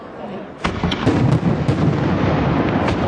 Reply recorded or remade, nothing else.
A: recorded